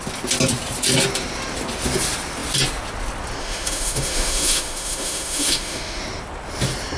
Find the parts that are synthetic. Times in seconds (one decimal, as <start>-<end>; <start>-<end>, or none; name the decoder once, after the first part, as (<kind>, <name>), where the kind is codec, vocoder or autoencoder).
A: 3.4-6.0 (autoencoder, DAC-VAE)